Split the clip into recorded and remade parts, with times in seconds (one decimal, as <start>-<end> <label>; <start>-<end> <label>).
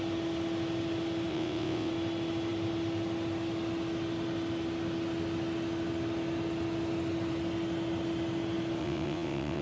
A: 0.0-1.3 recorded; 1.3-1.9 remade; 1.9-8.8 recorded; 8.8-9.6 remade